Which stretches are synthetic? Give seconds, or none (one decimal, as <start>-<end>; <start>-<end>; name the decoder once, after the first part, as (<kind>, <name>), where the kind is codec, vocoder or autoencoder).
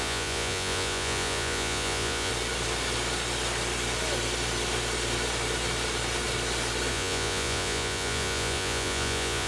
0.0-2.3 (vocoder, Vocos); 6.9-9.5